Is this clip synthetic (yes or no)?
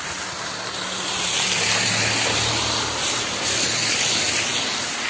no